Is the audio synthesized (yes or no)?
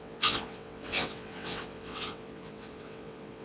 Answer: yes